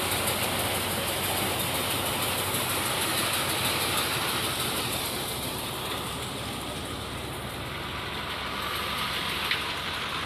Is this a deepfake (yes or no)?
no